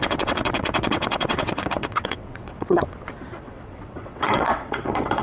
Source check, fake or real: fake